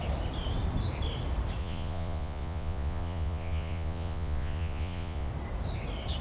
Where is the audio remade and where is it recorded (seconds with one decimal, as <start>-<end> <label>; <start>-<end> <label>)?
0.0-1.6 recorded; 1.6-5.3 remade; 5.3-6.2 recorded